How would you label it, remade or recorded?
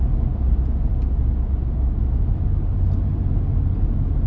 recorded